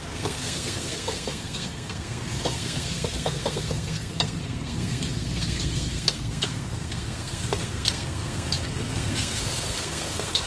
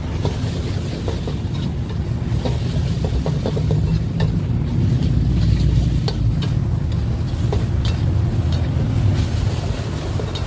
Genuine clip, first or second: second